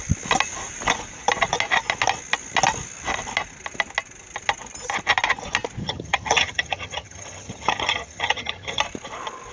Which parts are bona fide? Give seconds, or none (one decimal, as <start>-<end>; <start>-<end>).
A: 0.0-5.8; 8.8-9.5